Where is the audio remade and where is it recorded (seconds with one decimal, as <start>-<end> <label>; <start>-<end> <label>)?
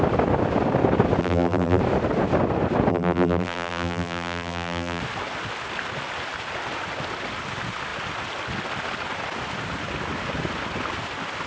0.0-1.2 recorded; 1.2-1.8 remade; 1.8-2.9 recorded; 2.9-5.0 remade; 5.0-11.5 recorded